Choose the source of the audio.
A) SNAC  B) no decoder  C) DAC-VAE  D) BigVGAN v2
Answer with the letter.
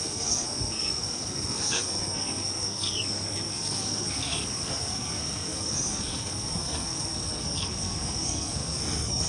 A